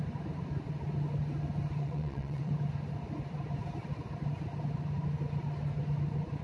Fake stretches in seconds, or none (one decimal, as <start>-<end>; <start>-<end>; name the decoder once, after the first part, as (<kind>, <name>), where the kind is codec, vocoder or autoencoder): 1.8-2.5 (vocoder, WaveNeXt)